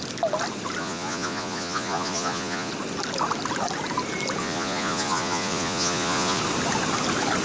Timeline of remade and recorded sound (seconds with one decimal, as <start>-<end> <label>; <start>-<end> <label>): 0.0-0.8 recorded; 0.8-2.7 remade; 2.7-4.4 recorded; 4.4-6.4 remade; 6.4-7.4 recorded